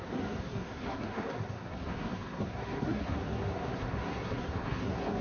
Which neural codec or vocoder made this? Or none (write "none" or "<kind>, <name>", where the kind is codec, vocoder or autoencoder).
codec, SNAC